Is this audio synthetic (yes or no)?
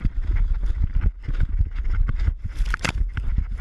no